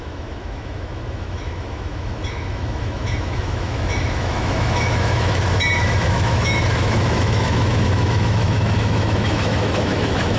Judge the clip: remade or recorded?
remade